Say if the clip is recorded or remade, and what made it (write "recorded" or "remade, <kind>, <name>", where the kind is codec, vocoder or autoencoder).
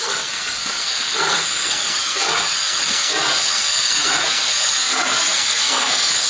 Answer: remade, codec, SNAC